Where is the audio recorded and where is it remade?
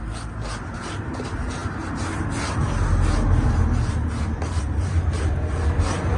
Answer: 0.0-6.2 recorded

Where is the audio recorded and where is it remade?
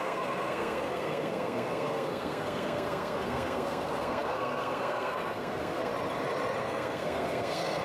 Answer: 0.0-5.9 remade; 5.9-6.6 recorded; 6.6-7.8 remade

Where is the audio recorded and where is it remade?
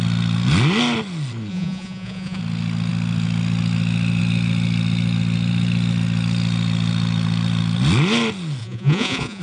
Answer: 0.0-1.5 recorded; 1.5-2.4 remade; 2.4-8.6 recorded; 8.6-9.4 remade